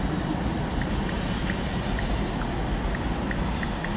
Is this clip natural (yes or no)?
yes